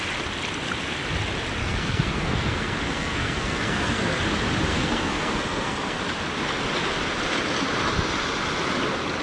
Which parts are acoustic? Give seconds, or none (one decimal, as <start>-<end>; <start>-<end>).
0.0-1.6; 4.2-4.7; 6.0-9.2